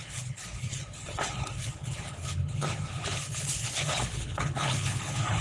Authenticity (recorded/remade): remade